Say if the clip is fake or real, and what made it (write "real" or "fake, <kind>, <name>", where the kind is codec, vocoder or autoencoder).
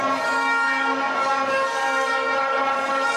fake, codec, DAC